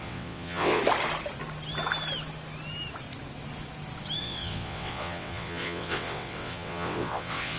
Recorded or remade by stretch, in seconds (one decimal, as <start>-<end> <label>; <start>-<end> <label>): 0.0-0.8 remade; 0.8-4.2 recorded; 4.2-7.6 remade